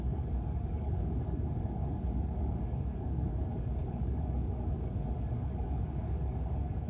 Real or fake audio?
fake